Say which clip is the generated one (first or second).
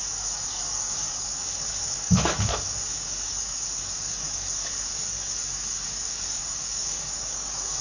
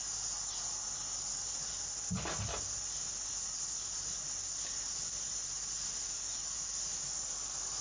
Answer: first